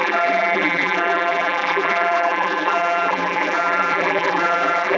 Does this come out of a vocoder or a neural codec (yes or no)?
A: yes